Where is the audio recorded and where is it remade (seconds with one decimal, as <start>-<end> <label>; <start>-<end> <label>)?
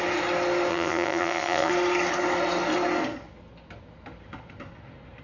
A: 0.0-0.7 recorded; 0.7-1.7 remade; 1.7-5.2 recorded